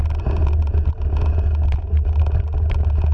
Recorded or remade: recorded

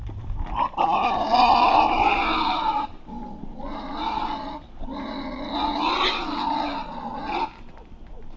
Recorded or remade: recorded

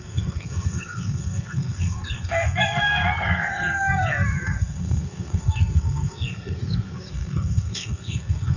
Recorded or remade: remade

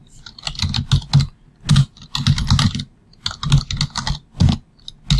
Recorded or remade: recorded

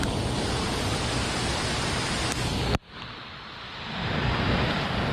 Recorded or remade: recorded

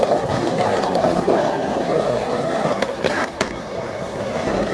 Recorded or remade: remade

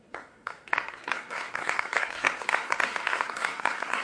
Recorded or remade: remade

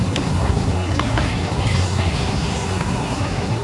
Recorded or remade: remade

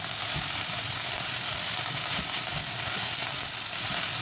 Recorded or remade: recorded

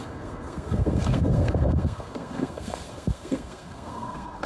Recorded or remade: remade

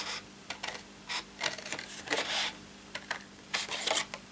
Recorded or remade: recorded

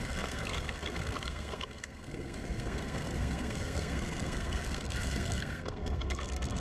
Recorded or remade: remade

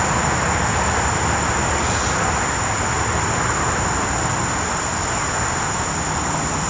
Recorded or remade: recorded